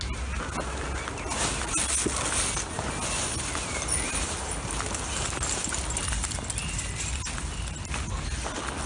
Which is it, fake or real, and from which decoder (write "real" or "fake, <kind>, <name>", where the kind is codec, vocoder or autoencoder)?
real